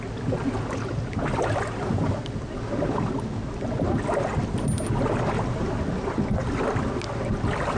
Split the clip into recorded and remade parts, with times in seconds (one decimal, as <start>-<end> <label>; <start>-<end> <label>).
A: 0.0-7.8 recorded